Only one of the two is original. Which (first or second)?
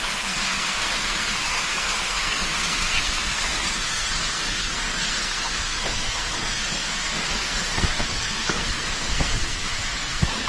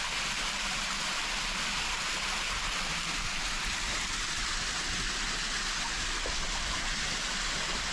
second